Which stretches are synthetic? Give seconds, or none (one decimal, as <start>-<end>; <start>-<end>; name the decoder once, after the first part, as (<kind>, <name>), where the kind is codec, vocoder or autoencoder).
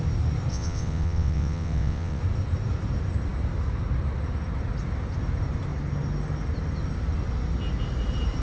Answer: 0.5-2.2 (vocoder, WaveNeXt)